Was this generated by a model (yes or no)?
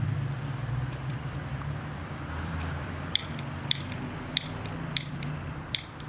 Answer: yes